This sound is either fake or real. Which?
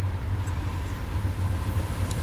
fake